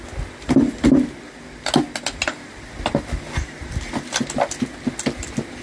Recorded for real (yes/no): yes